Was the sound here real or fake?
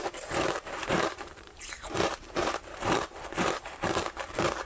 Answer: fake